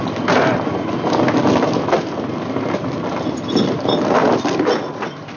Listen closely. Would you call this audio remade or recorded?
recorded